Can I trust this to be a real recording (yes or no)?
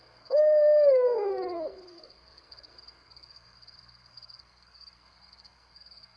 no